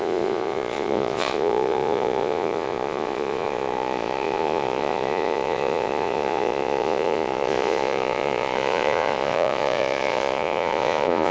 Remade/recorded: remade